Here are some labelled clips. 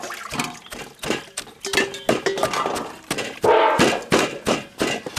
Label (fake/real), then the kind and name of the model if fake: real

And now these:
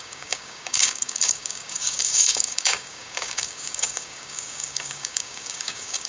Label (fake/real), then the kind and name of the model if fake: fake, codec, DAC